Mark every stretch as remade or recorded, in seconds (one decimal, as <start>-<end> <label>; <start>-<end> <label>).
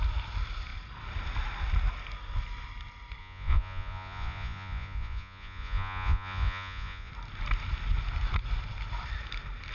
0.0-3.2 recorded; 3.2-7.1 remade; 7.1-9.7 recorded